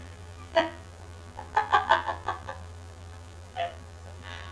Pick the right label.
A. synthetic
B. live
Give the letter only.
A